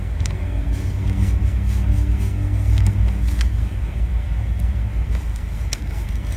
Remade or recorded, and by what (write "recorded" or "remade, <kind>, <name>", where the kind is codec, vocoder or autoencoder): remade, codec, SNAC